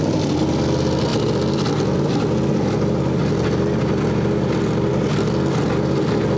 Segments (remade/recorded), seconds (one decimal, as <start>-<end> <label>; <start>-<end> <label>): 0.0-6.4 recorded